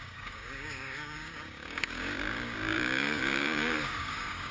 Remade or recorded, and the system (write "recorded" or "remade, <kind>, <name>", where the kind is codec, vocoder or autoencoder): remade, codec, DAC